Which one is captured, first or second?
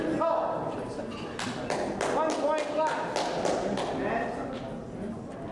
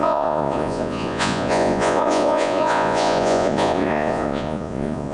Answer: first